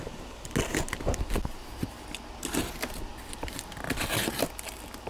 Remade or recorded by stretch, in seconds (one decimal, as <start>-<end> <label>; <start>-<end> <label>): 0.0-5.1 recorded